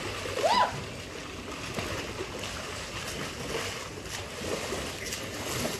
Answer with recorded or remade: recorded